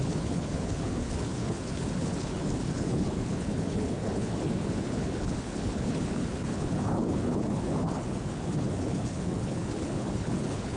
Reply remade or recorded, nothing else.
remade